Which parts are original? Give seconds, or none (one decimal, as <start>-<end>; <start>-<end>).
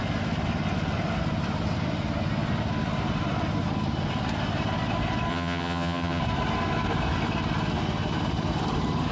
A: 0.0-5.3; 6.2-9.1